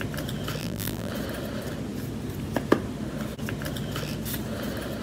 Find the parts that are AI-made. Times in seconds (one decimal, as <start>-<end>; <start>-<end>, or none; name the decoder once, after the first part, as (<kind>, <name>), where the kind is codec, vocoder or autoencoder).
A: 0.6-1.1 (vocoder, BigVGAN v2)